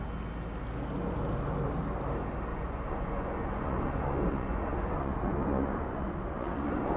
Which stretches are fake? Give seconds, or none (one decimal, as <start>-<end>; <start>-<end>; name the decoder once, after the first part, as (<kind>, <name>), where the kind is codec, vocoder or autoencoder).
2.5-7.0 (vocoder, Vocos)